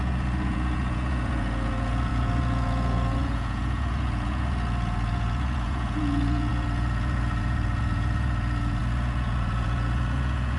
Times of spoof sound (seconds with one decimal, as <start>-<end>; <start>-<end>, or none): 0.0-10.6